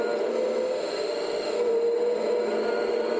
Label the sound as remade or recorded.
recorded